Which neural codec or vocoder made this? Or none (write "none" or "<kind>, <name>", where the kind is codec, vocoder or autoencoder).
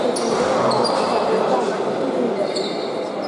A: none